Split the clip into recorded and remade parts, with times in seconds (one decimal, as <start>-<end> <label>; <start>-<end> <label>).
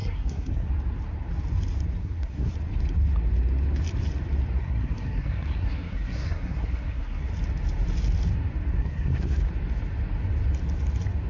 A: 0.0-0.7 remade; 0.7-2.0 recorded; 2.0-2.5 remade; 2.5-4.6 recorded; 4.6-7.3 remade; 7.3-8.8 recorded; 8.8-9.5 remade; 9.5-11.3 recorded